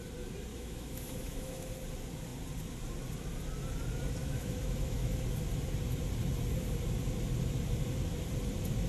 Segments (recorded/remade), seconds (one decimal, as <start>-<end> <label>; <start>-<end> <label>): 0.0-0.5 recorded; 0.5-1.7 remade; 1.7-4.2 recorded; 4.2-5.2 remade; 5.2-8.9 recorded